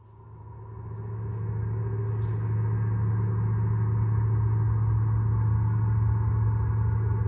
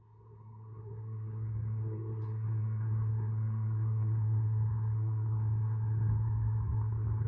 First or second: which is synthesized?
second